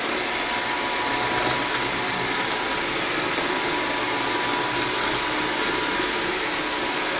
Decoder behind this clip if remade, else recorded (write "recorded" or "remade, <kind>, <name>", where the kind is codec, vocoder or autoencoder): recorded